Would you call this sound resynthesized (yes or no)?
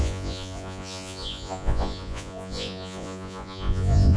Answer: yes